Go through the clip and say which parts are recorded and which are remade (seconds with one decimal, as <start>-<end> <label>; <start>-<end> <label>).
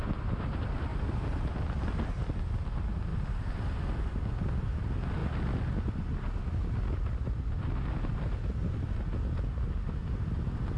0.0-10.8 recorded